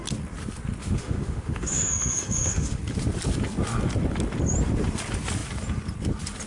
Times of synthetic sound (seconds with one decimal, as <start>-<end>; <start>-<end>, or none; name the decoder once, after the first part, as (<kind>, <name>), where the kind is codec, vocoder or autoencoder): 0.8-2.8 (autoencoder, DAC-VAE)